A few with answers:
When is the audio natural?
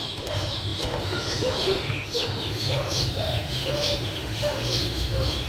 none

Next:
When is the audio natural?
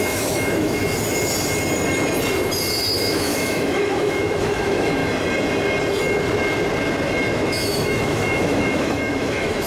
0.8-3.0; 5.0-7.3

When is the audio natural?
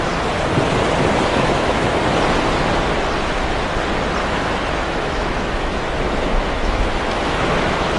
0.0-1.3; 2.0-4.2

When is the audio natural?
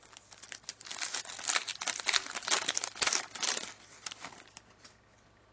0.0-5.5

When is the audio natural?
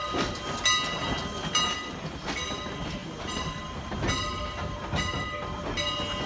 0.0-6.3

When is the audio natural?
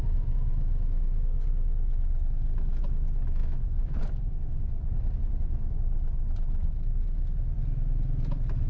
0.0-3.4; 4.0-8.7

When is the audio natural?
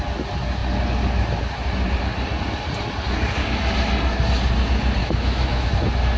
0.0-5.0; 5.7-6.2